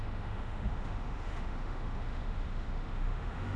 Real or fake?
fake